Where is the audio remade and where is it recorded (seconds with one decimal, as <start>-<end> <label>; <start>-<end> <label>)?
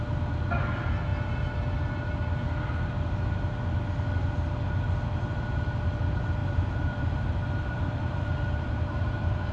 0.0-6.4 recorded; 6.4-9.5 remade